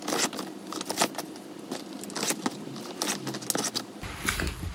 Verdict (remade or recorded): recorded